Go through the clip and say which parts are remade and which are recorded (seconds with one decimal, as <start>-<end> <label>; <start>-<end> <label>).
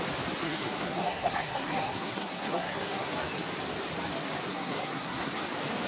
0.0-0.4 recorded; 0.4-3.1 remade; 3.1-4.5 recorded; 4.5-5.4 remade; 5.4-5.9 recorded